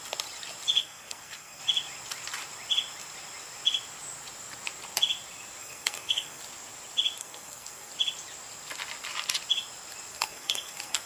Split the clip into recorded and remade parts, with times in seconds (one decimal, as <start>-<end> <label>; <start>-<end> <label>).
0.0-0.8 recorded; 0.8-1.6 remade; 1.6-5.6 recorded; 5.6-6.4 remade; 6.4-7.2 recorded; 7.2-7.9 remade; 7.9-10.1 recorded; 10.1-11.1 remade